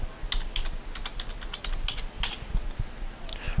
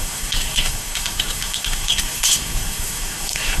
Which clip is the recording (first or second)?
first